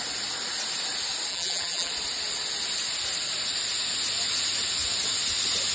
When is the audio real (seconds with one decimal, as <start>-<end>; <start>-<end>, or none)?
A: 0.0-1.3; 1.9-5.7